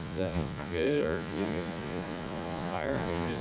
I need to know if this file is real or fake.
fake